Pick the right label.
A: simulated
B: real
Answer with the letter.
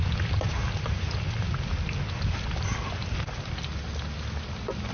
B